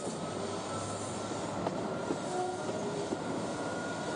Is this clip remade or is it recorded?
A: recorded